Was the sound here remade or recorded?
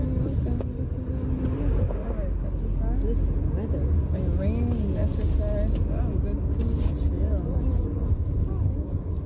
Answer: recorded